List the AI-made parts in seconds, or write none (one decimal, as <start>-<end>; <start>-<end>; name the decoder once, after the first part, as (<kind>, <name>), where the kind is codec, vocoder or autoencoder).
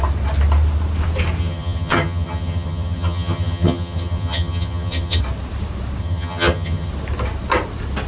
1.4-5.2 (vocoder, HiFi-GAN); 6.0-6.9